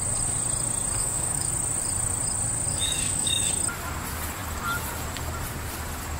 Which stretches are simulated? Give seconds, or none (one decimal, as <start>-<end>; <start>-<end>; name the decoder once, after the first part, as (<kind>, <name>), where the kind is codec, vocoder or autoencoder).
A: 1.0-1.5 (codec, DAC); 2.7-3.5